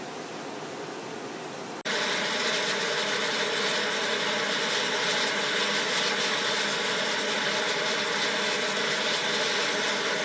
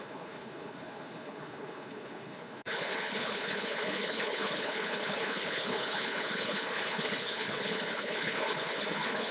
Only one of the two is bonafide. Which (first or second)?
first